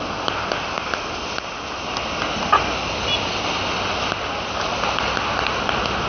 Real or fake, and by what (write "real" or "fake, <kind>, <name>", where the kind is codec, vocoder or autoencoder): real